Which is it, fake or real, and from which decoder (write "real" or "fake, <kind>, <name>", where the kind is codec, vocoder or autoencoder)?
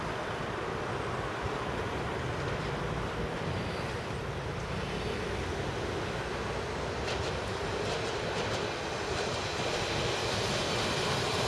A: real